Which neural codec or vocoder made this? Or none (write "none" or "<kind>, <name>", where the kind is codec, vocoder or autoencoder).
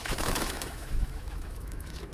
autoencoder, DAC-VAE